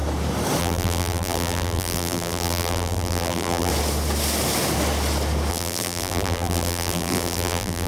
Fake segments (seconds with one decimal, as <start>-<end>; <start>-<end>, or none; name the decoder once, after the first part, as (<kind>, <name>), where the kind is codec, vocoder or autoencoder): 0.6-3.7 (vocoder, BigVGAN v2); 5.5-7.9